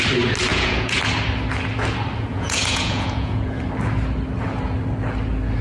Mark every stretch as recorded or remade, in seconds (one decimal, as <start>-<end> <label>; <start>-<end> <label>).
0.0-0.5 recorded; 0.5-1.0 remade; 1.0-2.3 recorded; 2.3-3.6 remade; 3.6-5.6 recorded